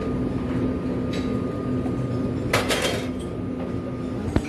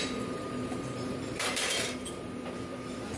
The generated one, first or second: second